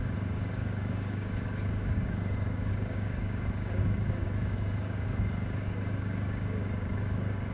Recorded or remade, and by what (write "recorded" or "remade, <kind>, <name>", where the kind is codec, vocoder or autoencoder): remade, codec, DAC